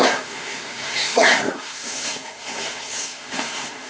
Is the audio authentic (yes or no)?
no